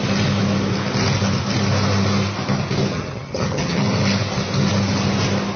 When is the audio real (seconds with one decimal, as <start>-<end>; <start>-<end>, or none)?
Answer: 0.0-2.9; 3.8-5.6